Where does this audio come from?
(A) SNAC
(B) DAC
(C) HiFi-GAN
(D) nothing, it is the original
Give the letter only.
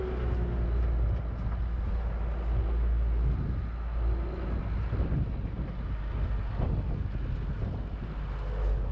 D